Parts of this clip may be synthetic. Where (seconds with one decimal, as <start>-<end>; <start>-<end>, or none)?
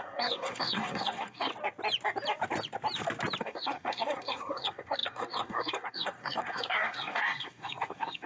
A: 0.0-1.5; 3.4-8.3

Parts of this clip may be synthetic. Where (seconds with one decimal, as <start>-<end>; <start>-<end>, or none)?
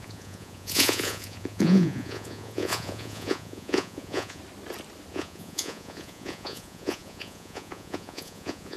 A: 0.0-4.4; 5.1-8.8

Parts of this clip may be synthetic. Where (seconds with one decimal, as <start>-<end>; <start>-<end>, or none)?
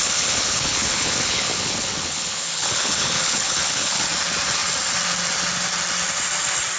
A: 0.0-4.1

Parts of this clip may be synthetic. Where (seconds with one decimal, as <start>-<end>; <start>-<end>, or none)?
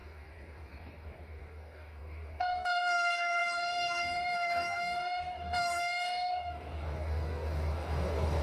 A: 0.0-8.4